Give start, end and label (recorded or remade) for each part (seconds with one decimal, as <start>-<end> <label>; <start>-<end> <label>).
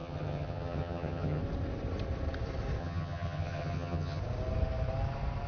0.0-1.4 remade; 1.4-2.8 recorded; 2.8-4.2 remade; 4.2-5.5 recorded